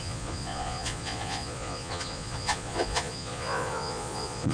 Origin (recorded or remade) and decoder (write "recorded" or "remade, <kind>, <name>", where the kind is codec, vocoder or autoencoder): remade, vocoder, Vocos